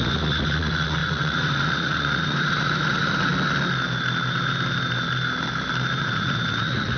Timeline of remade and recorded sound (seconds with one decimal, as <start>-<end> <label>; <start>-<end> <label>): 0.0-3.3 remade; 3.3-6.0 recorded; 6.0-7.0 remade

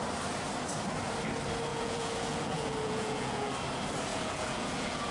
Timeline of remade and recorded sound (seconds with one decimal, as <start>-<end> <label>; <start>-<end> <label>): 0.0-1.7 recorded; 1.7-3.5 remade; 3.5-4.1 recorded; 4.1-5.1 remade

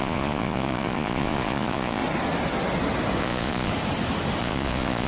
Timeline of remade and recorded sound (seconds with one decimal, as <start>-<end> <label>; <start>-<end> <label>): 0.0-2.0 remade; 2.0-3.2 recorded; 3.2-3.7 remade; 3.7-4.4 recorded; 4.4-5.1 remade